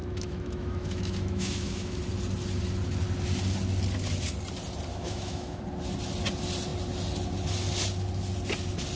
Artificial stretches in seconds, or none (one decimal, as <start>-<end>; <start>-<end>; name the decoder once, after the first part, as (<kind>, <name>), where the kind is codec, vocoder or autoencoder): 0.0-2.0 (autoencoder, DAC-VAE); 4.9-5.6